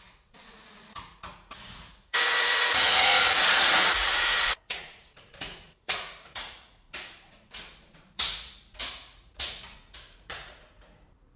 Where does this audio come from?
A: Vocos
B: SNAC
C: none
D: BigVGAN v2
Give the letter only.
A